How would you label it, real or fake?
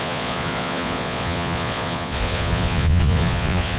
fake